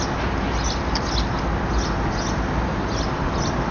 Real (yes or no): yes